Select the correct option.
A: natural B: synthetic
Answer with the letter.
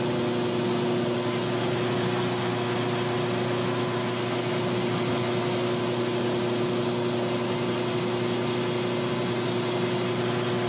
A